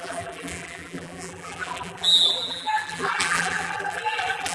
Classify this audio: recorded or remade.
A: remade